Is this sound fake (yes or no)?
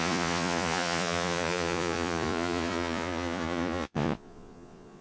yes